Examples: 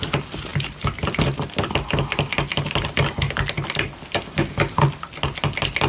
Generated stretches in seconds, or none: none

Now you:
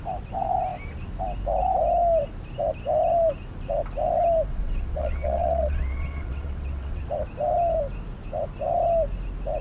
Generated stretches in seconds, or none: 4.5-7.0 (vocoder, WaveNeXt)

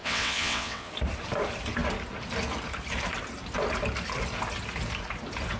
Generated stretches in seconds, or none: 0.0-0.9 (vocoder, WaveNeXt)

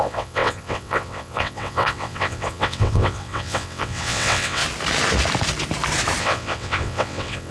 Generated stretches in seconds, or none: 0.0-4.6 (vocoder, WaveNeXt); 6.2-7.5

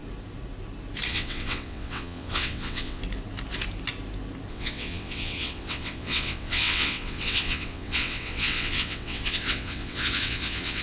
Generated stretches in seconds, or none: 1.1-3.0 (vocoder, WaveNeXt); 4.5-10.8

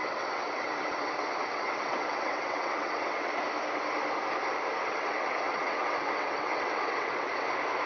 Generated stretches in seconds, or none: 0.0-3.3 (vocoder, WaveNeXt); 4.8-7.3

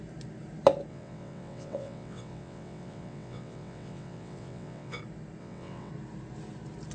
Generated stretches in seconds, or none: 0.9-5.0 (vocoder, WaveNeXt); 5.4-5.9